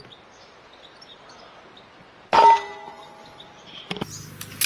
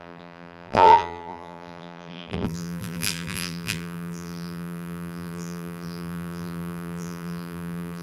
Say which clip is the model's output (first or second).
second